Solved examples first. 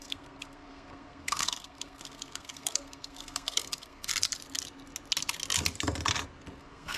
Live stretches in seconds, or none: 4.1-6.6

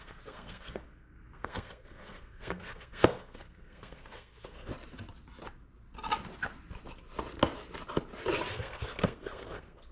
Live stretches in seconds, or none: 4.7-8.5

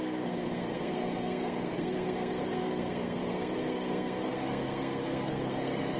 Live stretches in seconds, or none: none

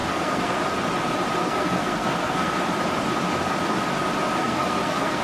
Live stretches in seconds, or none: 0.6-1.4; 2.5-4.4

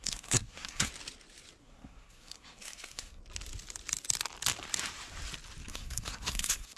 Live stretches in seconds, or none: 0.9-1.6; 3.2-5.7

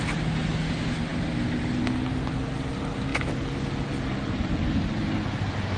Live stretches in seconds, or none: 0.0-5.8

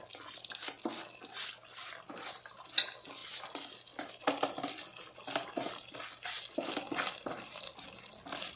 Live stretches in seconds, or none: 0.0-8.6